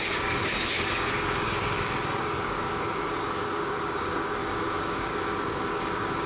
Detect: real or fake fake